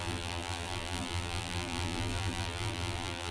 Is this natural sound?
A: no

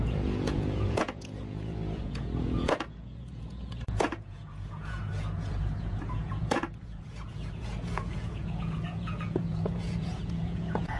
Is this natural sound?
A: no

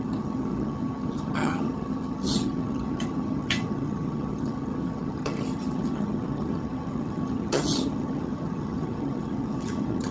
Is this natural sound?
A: no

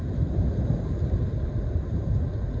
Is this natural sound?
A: yes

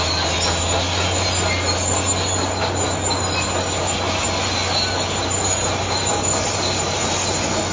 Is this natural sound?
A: yes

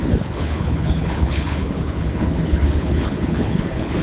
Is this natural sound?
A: no